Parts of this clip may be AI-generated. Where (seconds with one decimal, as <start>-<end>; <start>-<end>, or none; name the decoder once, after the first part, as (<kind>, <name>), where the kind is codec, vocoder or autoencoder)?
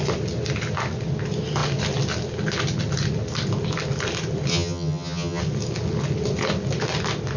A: 4.5-5.4 (vocoder, HiFi-GAN)